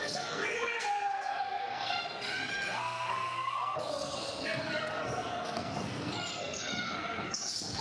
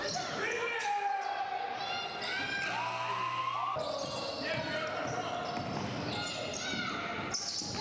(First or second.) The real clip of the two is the second